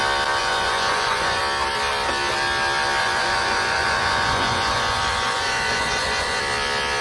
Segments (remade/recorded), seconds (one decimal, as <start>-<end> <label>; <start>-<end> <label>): 0.0-0.4 recorded; 0.4-1.4 remade; 1.4-3.0 recorded; 3.0-6.4 remade; 6.4-7.0 recorded